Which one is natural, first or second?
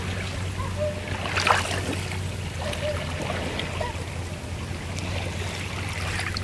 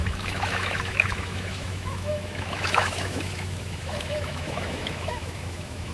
first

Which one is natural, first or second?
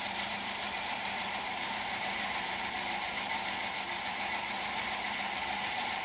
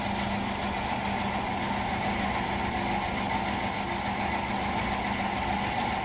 second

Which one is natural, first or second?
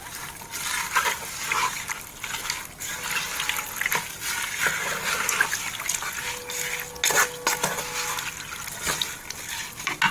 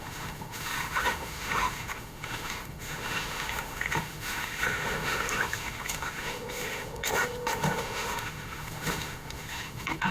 first